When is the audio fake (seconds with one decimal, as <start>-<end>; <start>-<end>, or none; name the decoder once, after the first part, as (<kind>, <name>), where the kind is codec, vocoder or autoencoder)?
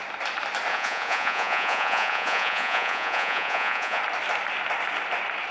0.7-4.0 (vocoder, Vocos)